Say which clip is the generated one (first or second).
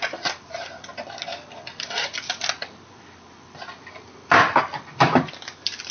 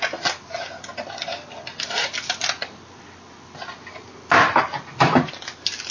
first